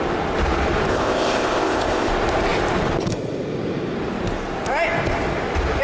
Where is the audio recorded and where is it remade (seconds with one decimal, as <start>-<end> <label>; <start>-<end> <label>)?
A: 0.0-0.9 recorded; 0.9-2.1 remade; 2.1-5.8 recorded